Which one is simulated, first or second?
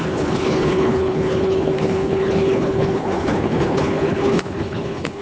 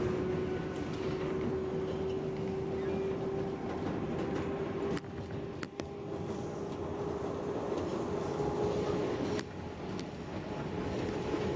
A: first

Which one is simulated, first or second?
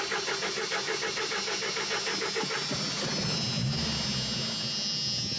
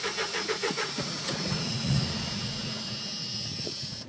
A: second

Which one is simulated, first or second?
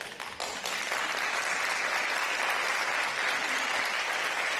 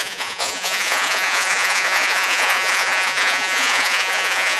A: second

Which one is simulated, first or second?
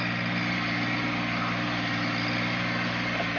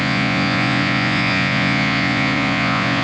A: second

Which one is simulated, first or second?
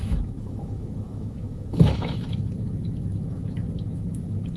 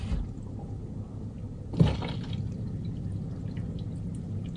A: first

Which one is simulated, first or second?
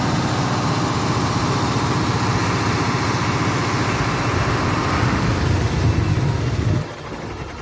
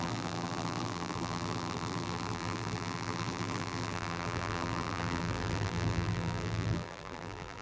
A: second